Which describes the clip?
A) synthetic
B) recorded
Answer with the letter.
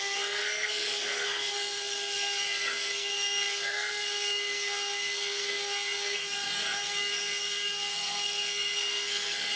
A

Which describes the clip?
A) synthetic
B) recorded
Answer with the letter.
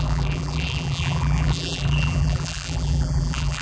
A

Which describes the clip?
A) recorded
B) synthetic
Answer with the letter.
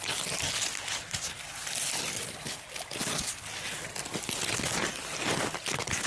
A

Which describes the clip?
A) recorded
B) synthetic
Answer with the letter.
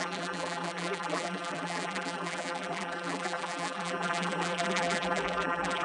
B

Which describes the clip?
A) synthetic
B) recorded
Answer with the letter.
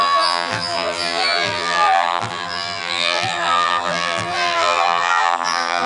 A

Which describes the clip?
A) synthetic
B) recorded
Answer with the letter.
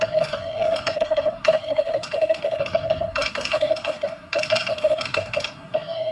A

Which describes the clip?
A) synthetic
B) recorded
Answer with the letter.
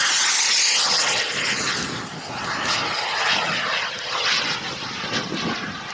B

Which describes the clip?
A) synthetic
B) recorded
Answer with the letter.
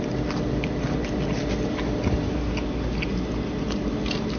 B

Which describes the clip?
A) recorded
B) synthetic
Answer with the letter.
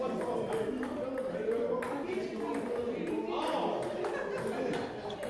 A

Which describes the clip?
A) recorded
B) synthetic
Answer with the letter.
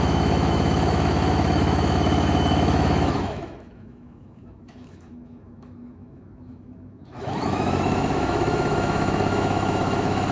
B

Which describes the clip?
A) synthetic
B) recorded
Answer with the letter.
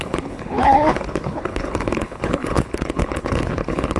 A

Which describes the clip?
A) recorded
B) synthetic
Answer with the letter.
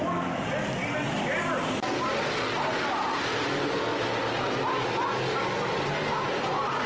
A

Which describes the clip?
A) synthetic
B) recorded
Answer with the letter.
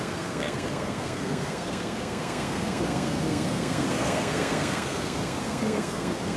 A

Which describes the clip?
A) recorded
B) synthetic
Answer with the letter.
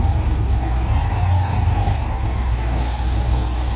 B